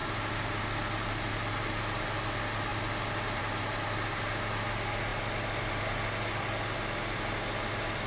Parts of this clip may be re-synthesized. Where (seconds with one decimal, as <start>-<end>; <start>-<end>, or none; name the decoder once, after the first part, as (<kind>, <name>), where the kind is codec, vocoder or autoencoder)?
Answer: none